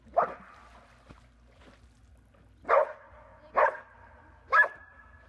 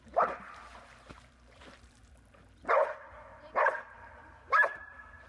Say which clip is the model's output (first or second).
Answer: second